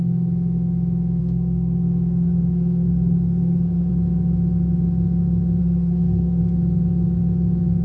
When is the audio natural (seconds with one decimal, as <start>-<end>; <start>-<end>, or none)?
0.0-1.2; 3.9-5.6; 6.4-7.8